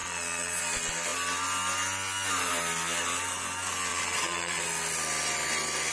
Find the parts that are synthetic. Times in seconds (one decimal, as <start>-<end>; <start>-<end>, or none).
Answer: 0.0-0.6; 3.9-4.6